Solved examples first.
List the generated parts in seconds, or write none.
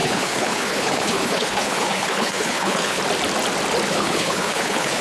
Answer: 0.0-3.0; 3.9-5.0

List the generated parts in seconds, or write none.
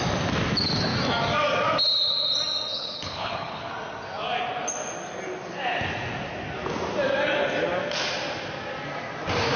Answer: 2.7-3.7